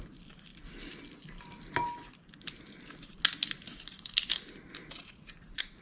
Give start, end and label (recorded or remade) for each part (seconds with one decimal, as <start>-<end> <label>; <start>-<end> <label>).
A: 0.0-0.5 remade; 0.5-4.0 recorded; 4.0-5.8 remade